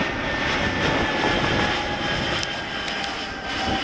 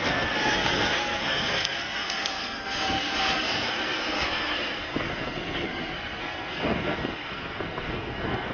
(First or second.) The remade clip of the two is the second